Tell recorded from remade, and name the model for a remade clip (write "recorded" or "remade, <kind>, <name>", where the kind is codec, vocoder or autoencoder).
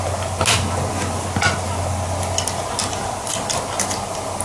recorded